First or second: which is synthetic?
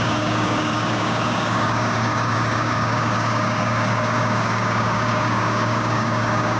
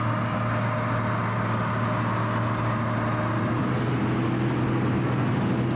first